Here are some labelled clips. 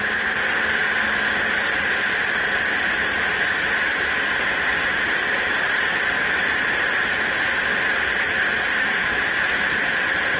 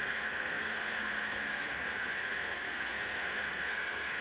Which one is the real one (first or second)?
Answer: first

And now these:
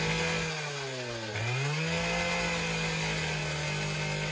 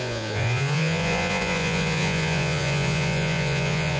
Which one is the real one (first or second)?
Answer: first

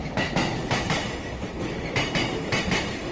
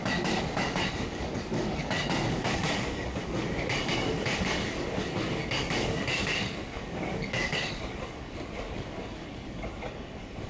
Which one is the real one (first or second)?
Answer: first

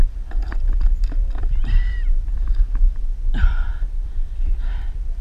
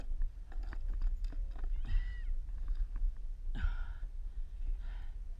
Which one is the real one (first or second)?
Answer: second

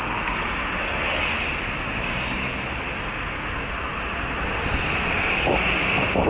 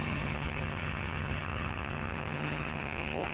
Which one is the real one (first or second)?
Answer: first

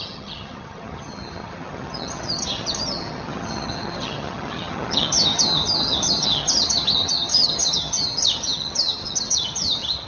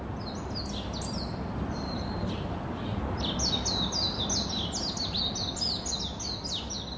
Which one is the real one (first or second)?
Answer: second